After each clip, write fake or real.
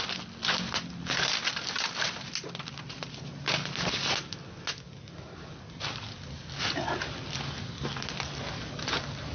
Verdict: real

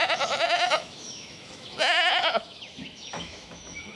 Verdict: fake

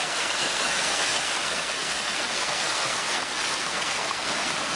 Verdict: fake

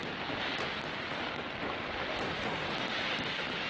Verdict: real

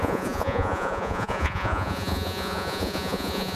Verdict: fake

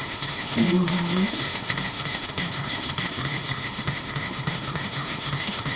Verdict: fake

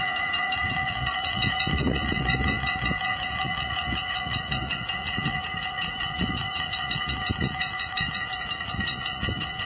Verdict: fake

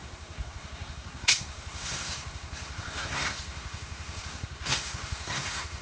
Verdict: fake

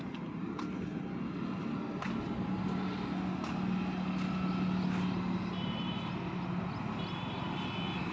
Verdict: real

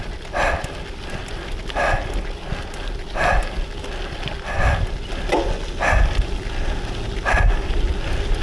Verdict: real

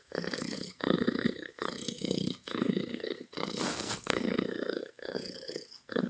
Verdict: fake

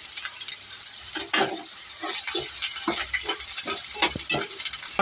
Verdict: real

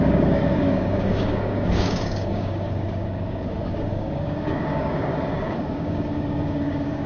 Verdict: fake